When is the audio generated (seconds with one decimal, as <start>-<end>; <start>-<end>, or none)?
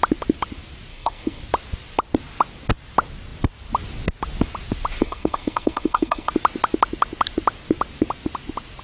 0.9-1.4; 5.0-6.3